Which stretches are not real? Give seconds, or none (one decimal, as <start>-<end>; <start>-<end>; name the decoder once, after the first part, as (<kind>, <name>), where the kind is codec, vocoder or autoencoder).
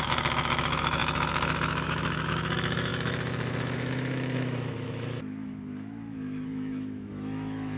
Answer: 0.0-7.8 (autoencoder, DAC-VAE)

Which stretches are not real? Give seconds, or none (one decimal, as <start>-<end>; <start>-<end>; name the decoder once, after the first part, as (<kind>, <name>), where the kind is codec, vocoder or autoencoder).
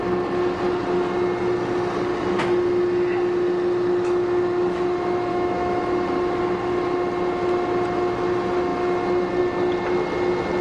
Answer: 5.3-5.8 (autoencoder, DAC-VAE)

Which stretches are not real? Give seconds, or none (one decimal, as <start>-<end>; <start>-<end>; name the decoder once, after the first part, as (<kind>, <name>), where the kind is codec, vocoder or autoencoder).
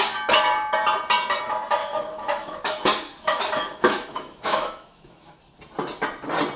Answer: 1.8-5.4 (autoencoder, DAC-VAE)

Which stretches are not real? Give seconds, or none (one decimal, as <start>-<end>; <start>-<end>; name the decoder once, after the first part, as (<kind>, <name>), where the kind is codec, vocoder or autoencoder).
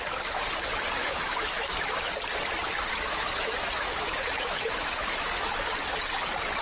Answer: 1.0-2.1 (autoencoder, DAC-VAE); 2.9-5.6